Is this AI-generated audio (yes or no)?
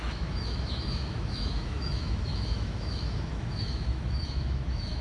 yes